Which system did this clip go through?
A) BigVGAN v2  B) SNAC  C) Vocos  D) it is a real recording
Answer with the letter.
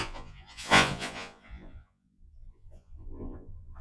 C